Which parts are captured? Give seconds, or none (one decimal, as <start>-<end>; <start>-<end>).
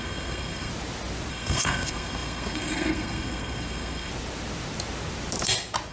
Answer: 0.7-1.3; 4.1-5.9